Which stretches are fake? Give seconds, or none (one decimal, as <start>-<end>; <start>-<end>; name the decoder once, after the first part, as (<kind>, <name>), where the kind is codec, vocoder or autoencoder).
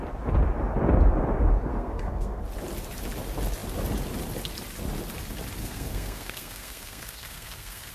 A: 1.7-2.4 (codec, SNAC); 5.6-7.9